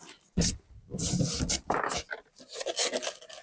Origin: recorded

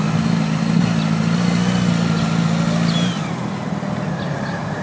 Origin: recorded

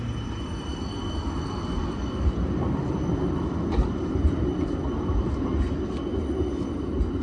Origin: recorded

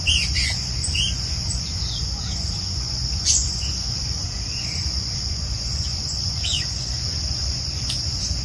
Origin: remade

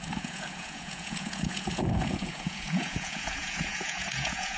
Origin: remade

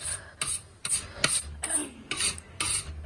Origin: recorded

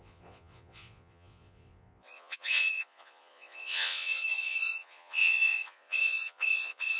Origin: remade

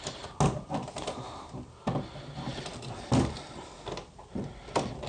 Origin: recorded